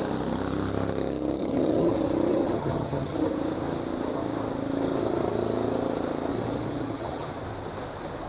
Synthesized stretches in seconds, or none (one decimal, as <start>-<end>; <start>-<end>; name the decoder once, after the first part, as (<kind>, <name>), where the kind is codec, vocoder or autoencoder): 1.4-1.9 (vocoder, HiFi-GAN); 2.3-3.3; 6.3-7.3